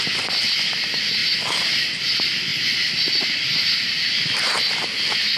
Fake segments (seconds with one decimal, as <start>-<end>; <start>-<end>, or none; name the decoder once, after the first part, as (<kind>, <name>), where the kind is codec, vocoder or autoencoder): 2.5-3.9 (vocoder, BigVGAN v2)